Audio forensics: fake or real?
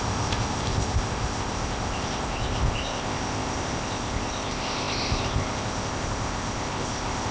fake